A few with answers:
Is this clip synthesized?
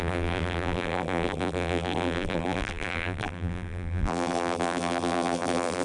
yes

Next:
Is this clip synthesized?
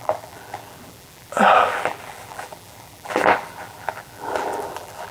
yes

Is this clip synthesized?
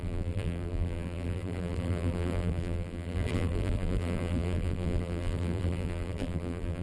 yes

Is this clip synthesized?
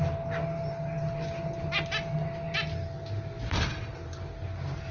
no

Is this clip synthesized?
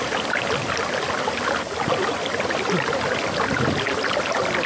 no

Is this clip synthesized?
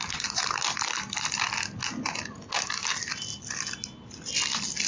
no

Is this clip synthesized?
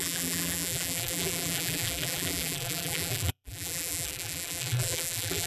yes